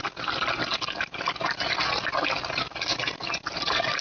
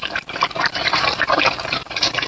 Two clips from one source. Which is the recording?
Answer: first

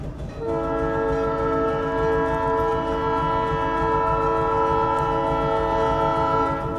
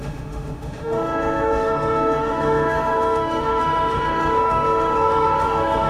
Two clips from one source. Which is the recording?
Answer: first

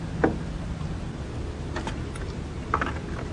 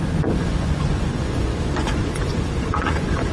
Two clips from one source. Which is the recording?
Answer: first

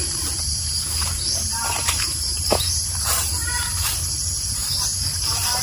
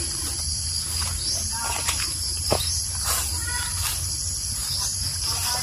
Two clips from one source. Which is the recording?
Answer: second